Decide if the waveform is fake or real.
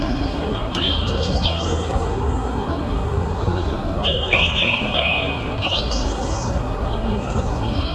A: fake